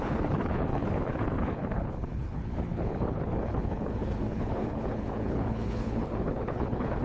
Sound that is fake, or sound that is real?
fake